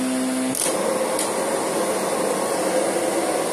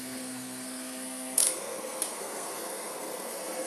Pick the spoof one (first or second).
second